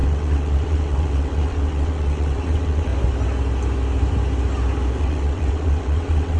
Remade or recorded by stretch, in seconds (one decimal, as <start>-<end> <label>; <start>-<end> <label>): 0.0-2.9 remade; 2.9-5.0 recorded; 5.0-6.4 remade